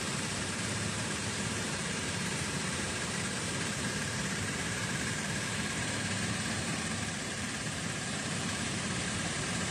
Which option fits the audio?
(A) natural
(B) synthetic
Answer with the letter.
B